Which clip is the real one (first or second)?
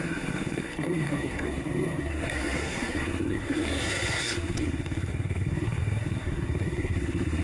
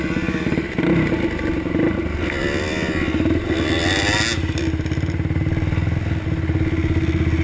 second